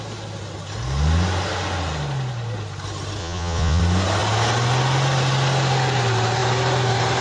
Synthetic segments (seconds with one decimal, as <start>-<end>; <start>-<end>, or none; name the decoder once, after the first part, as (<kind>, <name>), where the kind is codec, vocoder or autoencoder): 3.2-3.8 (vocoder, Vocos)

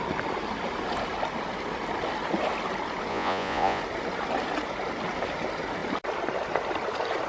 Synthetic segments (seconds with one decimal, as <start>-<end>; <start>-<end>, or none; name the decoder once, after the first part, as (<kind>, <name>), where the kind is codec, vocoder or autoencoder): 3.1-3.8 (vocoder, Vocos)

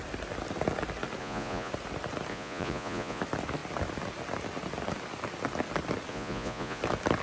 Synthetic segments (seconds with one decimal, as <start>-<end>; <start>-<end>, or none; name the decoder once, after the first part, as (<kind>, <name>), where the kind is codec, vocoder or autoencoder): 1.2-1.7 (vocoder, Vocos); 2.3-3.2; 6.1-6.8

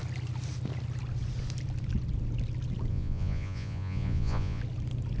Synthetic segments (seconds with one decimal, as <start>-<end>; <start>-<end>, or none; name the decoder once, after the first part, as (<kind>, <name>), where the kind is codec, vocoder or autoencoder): 2.9-4.6 (vocoder, Vocos)

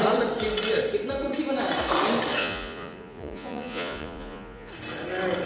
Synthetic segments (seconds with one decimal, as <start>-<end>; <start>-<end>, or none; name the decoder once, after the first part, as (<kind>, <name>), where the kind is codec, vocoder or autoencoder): 2.4-4.7 (vocoder, Vocos)